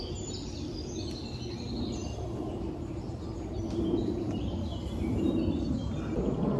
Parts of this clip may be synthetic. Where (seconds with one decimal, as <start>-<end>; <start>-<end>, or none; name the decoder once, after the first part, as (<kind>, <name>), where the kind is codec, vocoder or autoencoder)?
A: 2.0-6.0 (vocoder, BigVGAN v2)